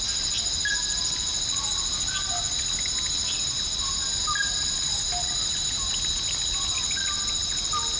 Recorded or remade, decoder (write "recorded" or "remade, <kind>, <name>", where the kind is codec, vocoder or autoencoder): recorded